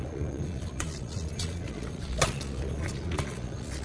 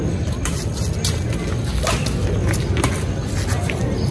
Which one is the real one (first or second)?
second